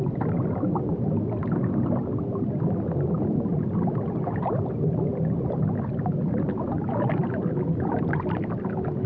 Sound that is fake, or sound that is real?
real